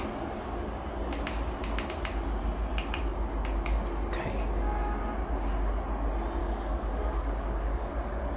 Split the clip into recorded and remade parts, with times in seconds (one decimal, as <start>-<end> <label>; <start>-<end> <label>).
0.0-6.4 recorded; 6.4-7.9 remade; 7.9-8.4 recorded